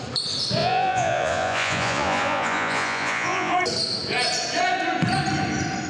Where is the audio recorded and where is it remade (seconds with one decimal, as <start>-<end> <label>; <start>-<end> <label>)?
0.0-0.6 recorded; 0.6-3.5 remade; 3.5-5.9 recorded